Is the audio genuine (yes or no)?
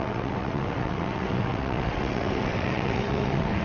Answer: no